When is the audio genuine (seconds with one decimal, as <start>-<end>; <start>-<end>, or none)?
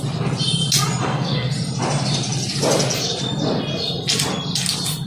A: 0.0-1.0; 1.5-5.1